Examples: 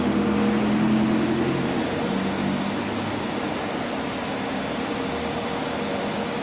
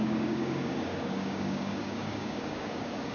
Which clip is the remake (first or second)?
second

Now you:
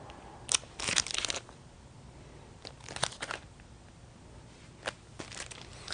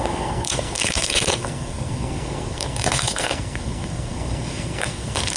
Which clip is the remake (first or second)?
second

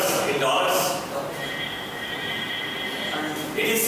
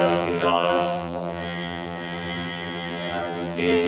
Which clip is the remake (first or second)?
second